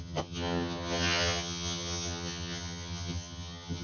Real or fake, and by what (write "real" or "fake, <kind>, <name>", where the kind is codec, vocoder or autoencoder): fake, vocoder, HiFi-GAN